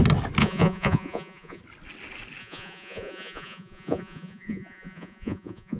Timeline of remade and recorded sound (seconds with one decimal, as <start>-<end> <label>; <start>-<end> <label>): 0.0-0.4 recorded; 0.4-1.6 remade; 1.6-2.4 recorded; 2.4-5.8 remade